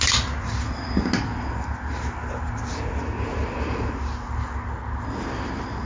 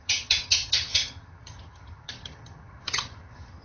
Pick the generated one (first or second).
second